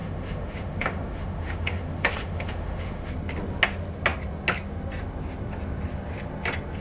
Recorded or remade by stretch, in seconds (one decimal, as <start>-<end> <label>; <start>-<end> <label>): 0.0-3.1 remade; 3.1-6.8 recorded